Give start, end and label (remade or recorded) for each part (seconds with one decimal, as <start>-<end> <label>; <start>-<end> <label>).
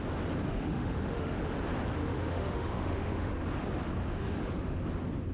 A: 0.0-0.5 recorded; 0.5-1.4 remade; 1.4-2.0 recorded; 2.0-3.3 remade; 3.3-4.0 recorded; 4.0-4.8 remade; 4.8-5.3 recorded